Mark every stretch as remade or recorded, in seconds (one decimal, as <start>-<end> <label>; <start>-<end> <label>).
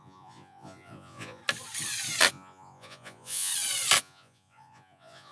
0.0-1.4 remade; 1.4-2.3 recorded; 2.3-3.5 remade; 3.5-4.0 recorded; 4.0-5.3 remade